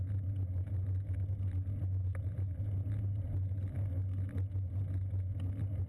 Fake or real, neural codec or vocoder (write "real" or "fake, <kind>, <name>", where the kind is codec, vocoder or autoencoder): real